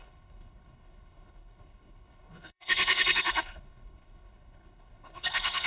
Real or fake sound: fake